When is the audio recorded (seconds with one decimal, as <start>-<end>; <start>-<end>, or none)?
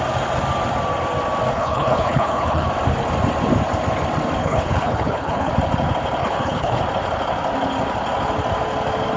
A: 0.0-1.5; 2.7-4.4; 5.5-6.2; 6.8-9.2